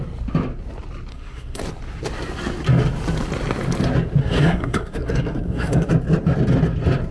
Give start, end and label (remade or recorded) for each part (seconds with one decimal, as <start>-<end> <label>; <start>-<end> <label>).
0.0-1.1 recorded; 1.1-1.6 remade; 1.6-4.2 recorded; 4.2-5.9 remade; 5.9-7.1 recorded